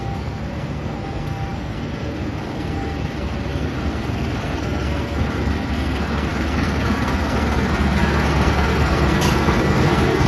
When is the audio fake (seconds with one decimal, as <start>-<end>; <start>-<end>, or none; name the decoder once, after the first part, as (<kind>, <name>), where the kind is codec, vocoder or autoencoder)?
0.0-10.3 (codec, SNAC)